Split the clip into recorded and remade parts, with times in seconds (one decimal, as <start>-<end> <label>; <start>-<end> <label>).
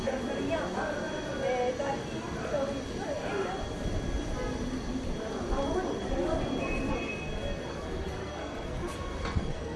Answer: 0.0-7.7 recorded; 7.7-9.8 remade